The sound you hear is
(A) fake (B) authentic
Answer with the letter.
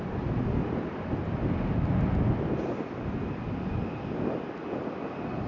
B